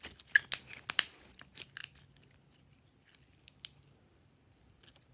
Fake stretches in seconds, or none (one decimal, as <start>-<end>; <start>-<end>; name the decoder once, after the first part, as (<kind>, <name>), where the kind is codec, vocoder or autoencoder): none